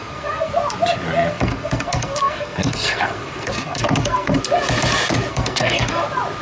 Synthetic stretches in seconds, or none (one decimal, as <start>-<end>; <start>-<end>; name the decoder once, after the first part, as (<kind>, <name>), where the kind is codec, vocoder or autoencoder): 0.0-0.5 (codec, SNAC); 1.3-4.4; 5.3-5.9